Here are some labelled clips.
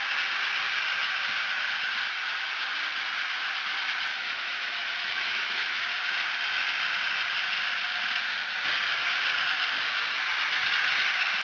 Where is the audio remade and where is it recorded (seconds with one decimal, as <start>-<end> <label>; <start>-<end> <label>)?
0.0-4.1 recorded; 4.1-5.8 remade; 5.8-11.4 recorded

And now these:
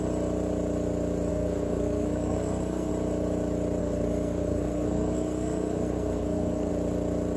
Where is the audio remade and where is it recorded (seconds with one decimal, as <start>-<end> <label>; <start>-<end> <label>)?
0.0-1.3 recorded; 1.3-2.9 remade; 2.9-3.8 recorded; 3.8-6.7 remade; 6.7-7.4 recorded

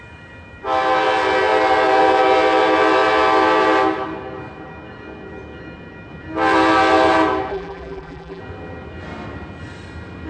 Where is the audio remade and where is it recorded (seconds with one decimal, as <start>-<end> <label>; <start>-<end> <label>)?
0.0-7.5 recorded; 7.5-8.4 remade; 8.4-10.3 recorded